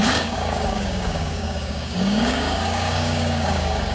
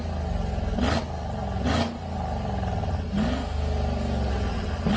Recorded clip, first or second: second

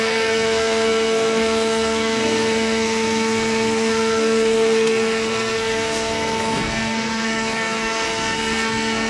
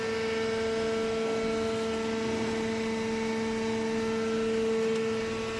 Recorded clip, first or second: second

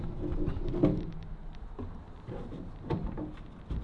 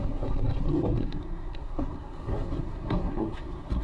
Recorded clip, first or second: first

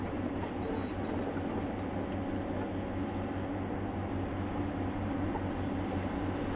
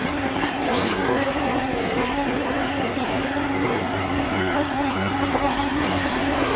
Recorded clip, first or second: first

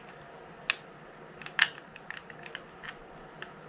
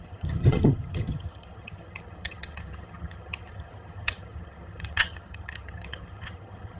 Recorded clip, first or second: first